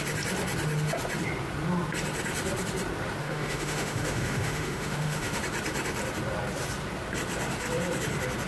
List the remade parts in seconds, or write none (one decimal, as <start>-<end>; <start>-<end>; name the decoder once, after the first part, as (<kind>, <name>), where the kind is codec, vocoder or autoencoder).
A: 3.2-5.4 (autoencoder, DAC-VAE)